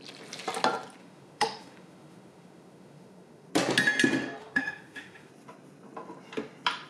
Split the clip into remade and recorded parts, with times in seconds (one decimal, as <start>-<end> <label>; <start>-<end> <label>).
0.0-1.0 recorded; 1.0-3.5 remade; 3.5-4.4 recorded; 4.4-5.3 remade; 5.3-6.9 recorded